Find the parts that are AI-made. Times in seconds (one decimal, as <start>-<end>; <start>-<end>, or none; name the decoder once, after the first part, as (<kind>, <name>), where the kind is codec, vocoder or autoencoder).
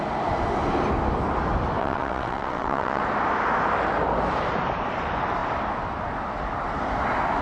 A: 1.8-3.0 (vocoder, WaveNeXt)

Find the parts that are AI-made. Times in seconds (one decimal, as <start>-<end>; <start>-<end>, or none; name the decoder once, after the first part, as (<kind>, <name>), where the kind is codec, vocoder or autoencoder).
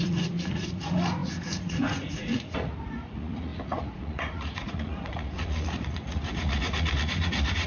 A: 0.0-7.7 (vocoder, Vocos)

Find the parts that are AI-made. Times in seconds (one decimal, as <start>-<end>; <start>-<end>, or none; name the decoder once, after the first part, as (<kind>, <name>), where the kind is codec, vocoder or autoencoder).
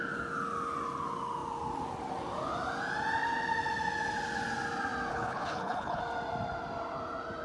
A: 5.1-6.0 (codec, HILCodec)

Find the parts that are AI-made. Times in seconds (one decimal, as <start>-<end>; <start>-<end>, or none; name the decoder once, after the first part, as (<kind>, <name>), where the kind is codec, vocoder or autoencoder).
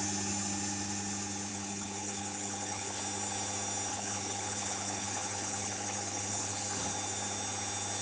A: 1.5-3.0 (codec, HILCodec); 3.9-6.8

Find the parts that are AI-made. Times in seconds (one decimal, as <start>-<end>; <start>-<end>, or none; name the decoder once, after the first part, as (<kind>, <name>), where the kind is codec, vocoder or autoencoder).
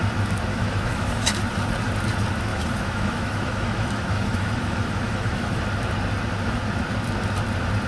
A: 0.5-1.3 (autoencoder, DAC-VAE); 2.5-5.6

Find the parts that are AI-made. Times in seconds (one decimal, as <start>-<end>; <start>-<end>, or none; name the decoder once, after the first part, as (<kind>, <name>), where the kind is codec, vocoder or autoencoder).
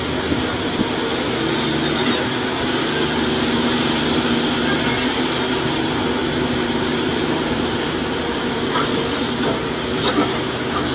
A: 6.2-10.0 (vocoder, BigVGAN v2)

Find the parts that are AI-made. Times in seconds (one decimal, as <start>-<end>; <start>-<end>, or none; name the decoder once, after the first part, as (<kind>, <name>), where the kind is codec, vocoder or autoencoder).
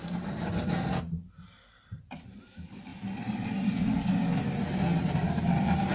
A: 0.0-2.9 (vocoder, BigVGAN v2); 5.0-5.9